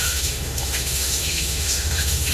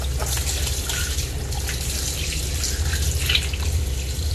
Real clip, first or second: second